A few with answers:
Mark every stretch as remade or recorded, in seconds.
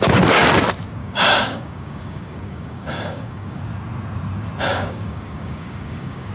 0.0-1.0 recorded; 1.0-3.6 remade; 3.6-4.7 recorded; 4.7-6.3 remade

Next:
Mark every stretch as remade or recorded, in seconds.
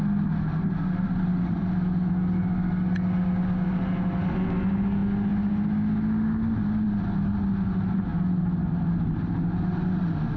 0.0-10.4 recorded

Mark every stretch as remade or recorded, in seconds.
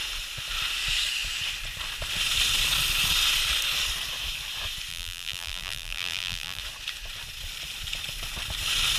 0.0-4.9 recorded; 4.9-6.6 remade; 6.6-9.0 recorded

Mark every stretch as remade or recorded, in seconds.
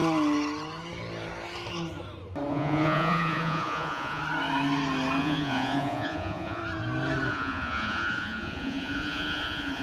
0.0-2.5 recorded; 2.5-4.2 remade; 4.2-5.2 recorded; 5.2-6.6 remade; 6.6-7.3 recorded; 7.3-9.8 remade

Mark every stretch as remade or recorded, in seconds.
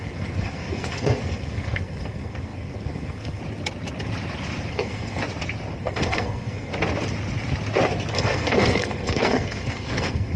0.0-3.4 remade; 3.4-4.7 recorded; 4.7-5.2 remade; 5.2-5.8 recorded; 5.8-6.7 remade; 6.7-8.1 recorded; 8.1-10.4 remade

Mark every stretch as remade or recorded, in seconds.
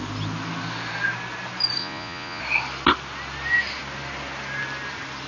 0.0-1.8 recorded; 1.8-2.4 remade; 2.4-5.3 recorded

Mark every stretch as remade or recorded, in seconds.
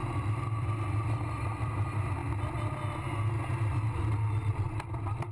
0.0-0.6 recorded; 0.6-2.2 remade; 2.2-4.5 recorded; 4.5-5.3 remade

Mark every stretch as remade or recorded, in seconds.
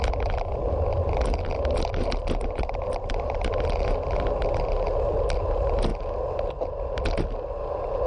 0.0-0.9 recorded; 0.9-3.9 remade; 3.9-8.1 recorded